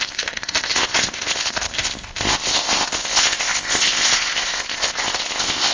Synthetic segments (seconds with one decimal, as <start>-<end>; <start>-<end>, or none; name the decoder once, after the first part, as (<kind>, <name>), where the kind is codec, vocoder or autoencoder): 0.0-5.7 (codec, ZipCodec)